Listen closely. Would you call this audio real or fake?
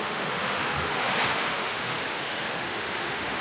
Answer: fake